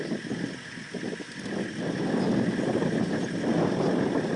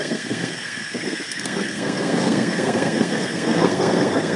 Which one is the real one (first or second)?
first